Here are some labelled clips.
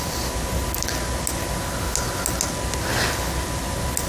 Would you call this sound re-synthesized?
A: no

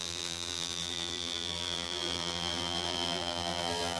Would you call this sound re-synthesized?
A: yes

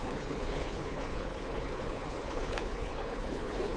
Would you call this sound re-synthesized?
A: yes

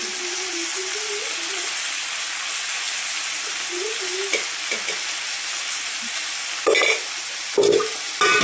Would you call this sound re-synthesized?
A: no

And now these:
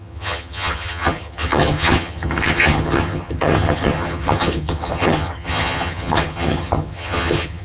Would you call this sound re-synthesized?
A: yes